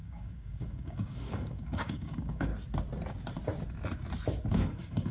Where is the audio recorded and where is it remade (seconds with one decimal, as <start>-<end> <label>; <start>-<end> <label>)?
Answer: 0.0-2.5 remade; 2.5-4.5 recorded; 4.5-5.1 remade